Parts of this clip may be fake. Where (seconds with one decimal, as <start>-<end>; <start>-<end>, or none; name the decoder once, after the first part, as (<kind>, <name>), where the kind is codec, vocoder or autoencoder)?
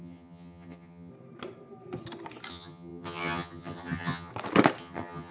0.0-1.1 (vocoder, HiFi-GAN); 2.5-4.3; 4.8-5.3